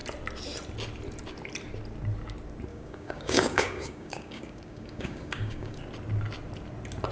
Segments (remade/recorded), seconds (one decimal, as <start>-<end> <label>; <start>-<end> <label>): 0.0-2.7 recorded; 2.7-5.8 remade; 5.8-7.1 recorded